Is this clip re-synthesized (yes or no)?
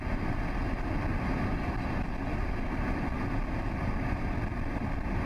no